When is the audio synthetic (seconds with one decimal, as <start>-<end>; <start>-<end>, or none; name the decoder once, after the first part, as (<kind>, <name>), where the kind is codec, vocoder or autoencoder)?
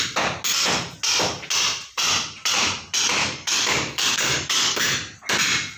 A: 3.2-4.9 (codec, DAC)